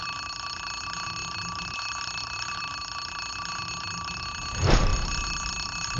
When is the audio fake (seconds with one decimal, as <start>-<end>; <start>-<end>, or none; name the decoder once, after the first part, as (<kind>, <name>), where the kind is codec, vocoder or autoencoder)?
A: 1.2-2.8 (vocoder, BigVGAN v2); 4.9-5.5